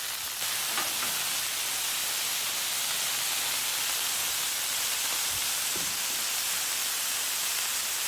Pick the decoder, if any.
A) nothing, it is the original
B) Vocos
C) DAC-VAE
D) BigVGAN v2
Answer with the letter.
A